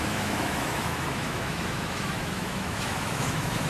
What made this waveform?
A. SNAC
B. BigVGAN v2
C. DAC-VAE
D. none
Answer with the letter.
C